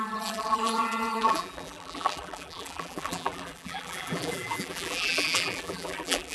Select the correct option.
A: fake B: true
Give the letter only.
A